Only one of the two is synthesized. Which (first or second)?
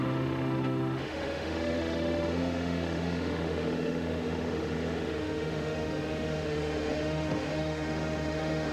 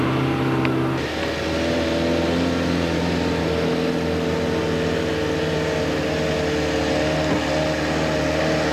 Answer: first